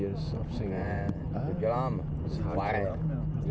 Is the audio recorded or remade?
remade